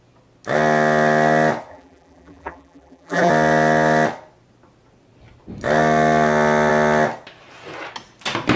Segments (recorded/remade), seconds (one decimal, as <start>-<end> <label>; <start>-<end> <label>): 0.0-1.7 recorded; 1.7-3.3 remade; 3.3-8.6 recorded